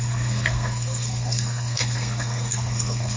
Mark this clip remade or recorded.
remade